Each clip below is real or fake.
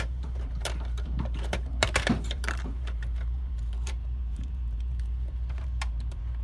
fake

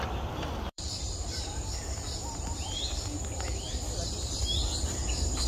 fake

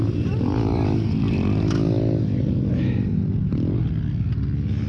real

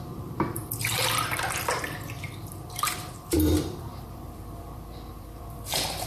fake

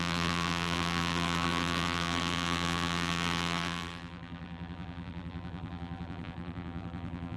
fake